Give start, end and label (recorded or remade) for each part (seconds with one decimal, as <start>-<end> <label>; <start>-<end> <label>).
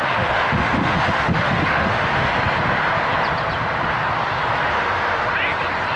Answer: 0.0-2.3 remade; 2.3-4.7 recorded; 4.7-5.3 remade; 5.3-6.0 recorded